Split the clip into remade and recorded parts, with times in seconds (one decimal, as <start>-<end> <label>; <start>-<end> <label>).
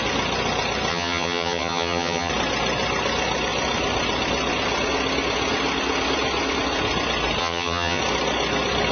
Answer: 0.0-0.9 recorded; 0.9-2.3 remade; 2.3-7.4 recorded; 7.4-8.0 remade; 8.0-8.9 recorded